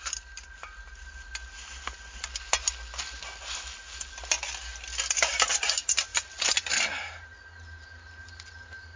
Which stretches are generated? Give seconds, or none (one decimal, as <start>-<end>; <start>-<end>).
none